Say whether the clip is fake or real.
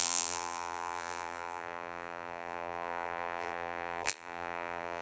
fake